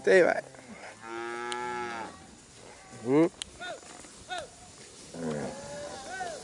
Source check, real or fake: real